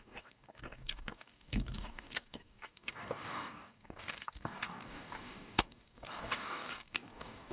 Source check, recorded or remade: remade